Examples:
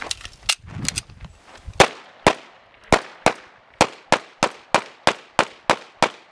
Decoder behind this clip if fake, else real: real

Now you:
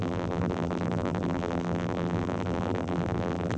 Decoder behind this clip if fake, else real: fake, vocoder, BigVGAN v2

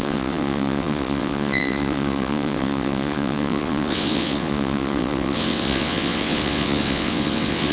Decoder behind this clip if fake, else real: fake, vocoder, WaveNeXt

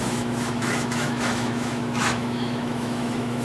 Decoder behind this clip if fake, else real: fake, autoencoder, DAC-VAE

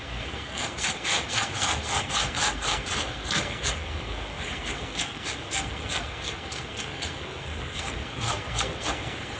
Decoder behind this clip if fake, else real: fake, codec, SNAC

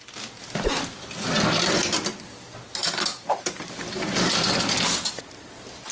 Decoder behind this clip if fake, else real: real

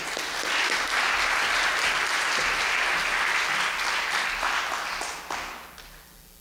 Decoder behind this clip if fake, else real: real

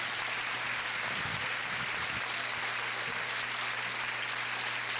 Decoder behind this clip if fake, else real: real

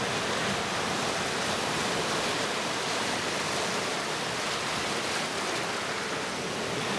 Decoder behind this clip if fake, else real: real